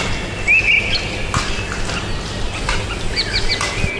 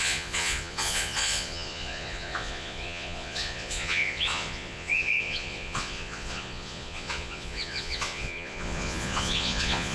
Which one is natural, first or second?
first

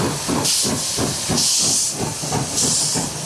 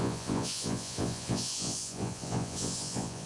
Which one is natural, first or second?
first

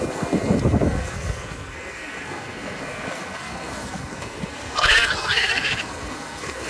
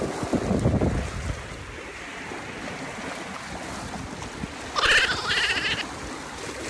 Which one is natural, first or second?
second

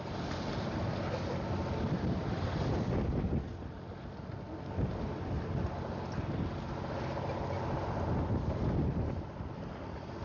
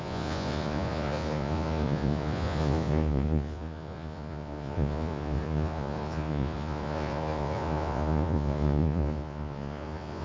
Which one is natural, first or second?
first